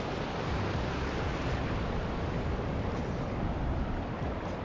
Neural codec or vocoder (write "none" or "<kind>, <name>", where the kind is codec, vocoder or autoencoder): none